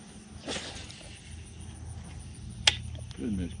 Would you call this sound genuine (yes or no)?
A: yes